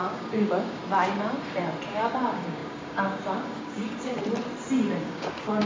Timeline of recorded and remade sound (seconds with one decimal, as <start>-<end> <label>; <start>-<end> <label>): 0.0-0.8 remade; 0.8-1.9 recorded; 1.9-4.2 remade; 4.2-5.0 recorded; 5.0-5.7 remade